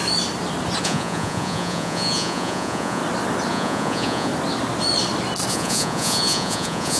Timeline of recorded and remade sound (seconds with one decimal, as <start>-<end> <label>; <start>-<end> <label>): 0.0-0.8 recorded; 0.8-3.0 remade; 3.0-3.5 recorded; 3.5-4.3 remade; 4.3-5.5 recorded; 5.5-7.0 remade